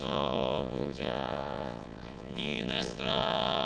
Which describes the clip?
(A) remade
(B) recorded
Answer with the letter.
A